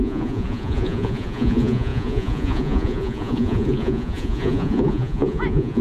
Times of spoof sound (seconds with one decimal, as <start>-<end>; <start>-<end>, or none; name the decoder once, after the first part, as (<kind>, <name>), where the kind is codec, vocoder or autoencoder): 0.0-5.8 (vocoder, Vocos)